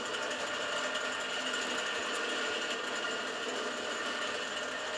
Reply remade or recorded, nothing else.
recorded